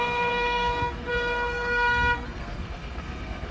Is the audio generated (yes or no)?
yes